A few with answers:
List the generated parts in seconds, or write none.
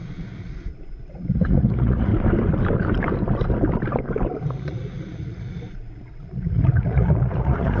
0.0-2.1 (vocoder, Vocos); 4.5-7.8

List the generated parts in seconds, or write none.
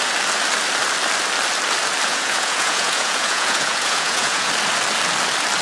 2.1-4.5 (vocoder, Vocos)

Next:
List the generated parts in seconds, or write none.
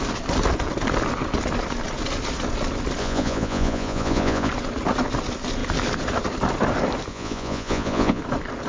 3.0-4.5 (vocoder, Vocos); 7.1-8.2